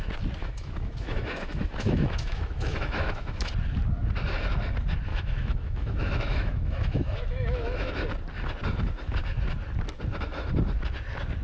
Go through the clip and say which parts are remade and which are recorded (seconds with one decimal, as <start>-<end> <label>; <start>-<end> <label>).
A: 0.0-0.4 recorded; 0.4-3.5 remade; 3.5-5.1 recorded; 5.1-7.9 remade; 7.9-11.4 recorded